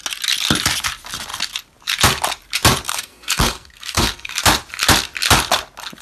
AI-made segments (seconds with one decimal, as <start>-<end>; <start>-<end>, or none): 2.9-4.4